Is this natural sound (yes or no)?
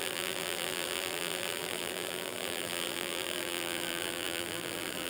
no